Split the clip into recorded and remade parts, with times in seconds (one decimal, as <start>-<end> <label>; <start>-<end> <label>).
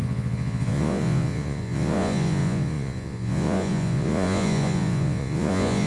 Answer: 0.0-5.9 remade